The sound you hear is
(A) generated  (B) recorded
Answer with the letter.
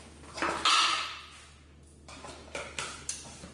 B